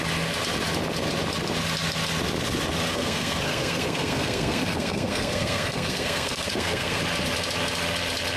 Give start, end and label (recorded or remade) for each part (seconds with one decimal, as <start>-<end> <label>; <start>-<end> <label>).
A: 0.0-2.9 recorded; 2.9-7.0 remade; 7.0-8.4 recorded